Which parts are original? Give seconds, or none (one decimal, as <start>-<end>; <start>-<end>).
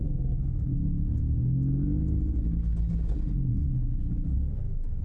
0.0-5.0